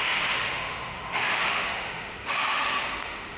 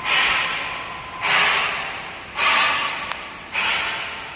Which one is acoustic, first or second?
second